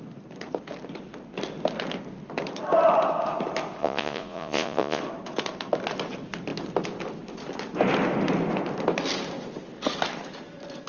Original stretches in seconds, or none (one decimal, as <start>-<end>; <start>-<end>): 0.0-3.8; 5.0-10.9

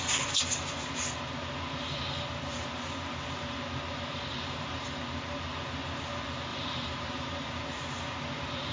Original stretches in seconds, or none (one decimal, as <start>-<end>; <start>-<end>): 0.0-4.3; 5.0-6.5; 7.5-8.7

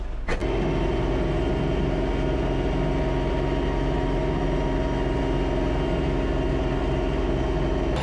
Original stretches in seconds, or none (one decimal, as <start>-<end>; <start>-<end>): 0.0-8.0

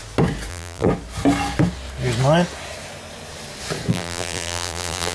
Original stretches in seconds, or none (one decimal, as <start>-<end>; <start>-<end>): 0.0-0.5; 0.9-3.9

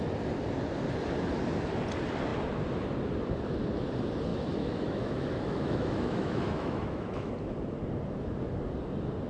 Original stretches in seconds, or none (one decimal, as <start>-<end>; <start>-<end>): 0.0-4.3; 7.3-9.3

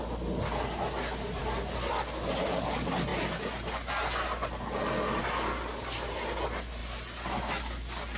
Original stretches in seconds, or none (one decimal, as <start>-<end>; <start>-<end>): 0.0-8.2

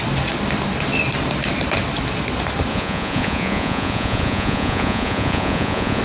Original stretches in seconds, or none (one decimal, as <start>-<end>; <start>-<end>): 0.0-2.7